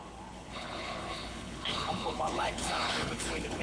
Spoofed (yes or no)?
yes